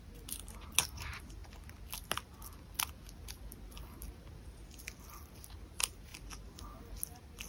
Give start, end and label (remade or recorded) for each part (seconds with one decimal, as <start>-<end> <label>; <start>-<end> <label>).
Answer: 0.0-7.5 recorded